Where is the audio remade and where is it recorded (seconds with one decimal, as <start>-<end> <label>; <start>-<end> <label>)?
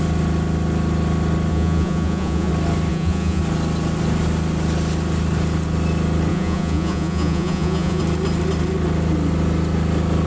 0.0-1.5 recorded; 1.5-2.5 remade; 2.5-2.9 recorded; 2.9-3.4 remade; 3.4-6.3 recorded; 6.3-8.0 remade; 8.0-10.3 recorded